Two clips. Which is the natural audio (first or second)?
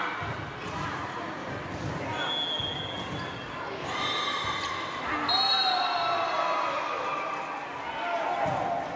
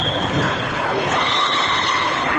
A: first